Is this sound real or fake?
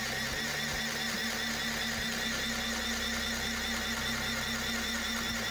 real